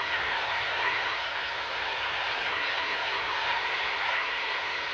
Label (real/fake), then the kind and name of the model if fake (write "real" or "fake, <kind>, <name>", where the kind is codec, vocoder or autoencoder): fake, codec, SNAC